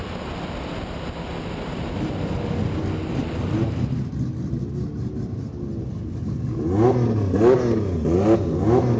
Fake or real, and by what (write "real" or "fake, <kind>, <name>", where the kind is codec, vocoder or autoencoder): real